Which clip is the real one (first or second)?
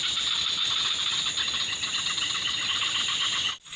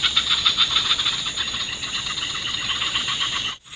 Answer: first